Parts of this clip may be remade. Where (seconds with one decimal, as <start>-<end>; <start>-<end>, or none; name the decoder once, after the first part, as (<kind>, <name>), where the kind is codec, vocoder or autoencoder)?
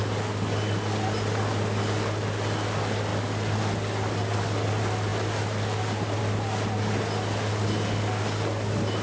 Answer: none